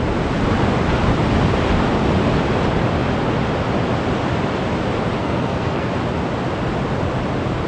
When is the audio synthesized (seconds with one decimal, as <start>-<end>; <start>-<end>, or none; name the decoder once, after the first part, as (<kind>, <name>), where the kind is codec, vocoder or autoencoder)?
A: 5.2-5.9 (codec, SNAC)